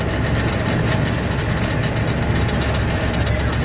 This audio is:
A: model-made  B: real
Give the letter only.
B